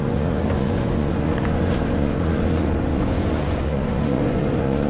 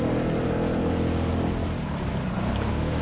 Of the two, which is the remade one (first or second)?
first